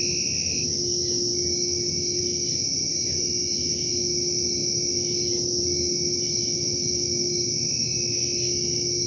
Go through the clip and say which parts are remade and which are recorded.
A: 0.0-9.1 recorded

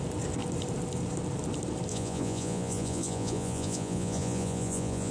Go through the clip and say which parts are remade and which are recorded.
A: 0.0-1.9 recorded; 1.9-5.1 remade

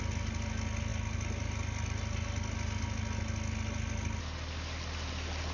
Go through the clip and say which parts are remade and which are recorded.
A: 0.0-5.5 recorded

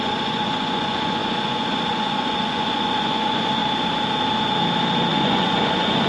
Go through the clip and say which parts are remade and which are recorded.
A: 0.0-3.6 remade; 3.6-5.1 recorded; 5.1-6.1 remade

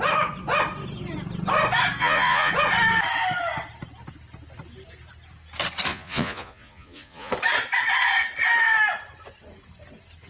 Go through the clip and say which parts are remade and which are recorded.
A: 0.0-2.0 recorded; 2.0-2.5 remade; 2.5-5.9 recorded; 5.9-7.3 remade; 7.3-10.3 recorded

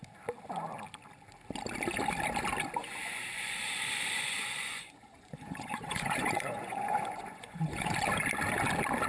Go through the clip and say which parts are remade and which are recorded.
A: 0.0-2.8 recorded; 2.8-7.9 remade; 7.9-9.1 recorded

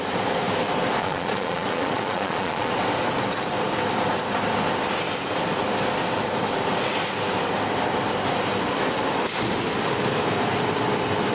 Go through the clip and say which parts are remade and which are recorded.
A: 0.0-1.0 recorded; 1.0-2.7 remade; 2.7-11.3 recorded